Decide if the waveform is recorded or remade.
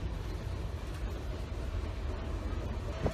recorded